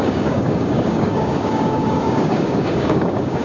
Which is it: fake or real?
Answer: fake